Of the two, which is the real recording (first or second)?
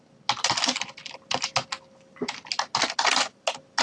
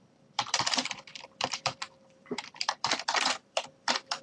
first